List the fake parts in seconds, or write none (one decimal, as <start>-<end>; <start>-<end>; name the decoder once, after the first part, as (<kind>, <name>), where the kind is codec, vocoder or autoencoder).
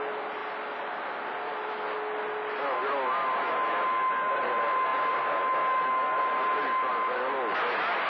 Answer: none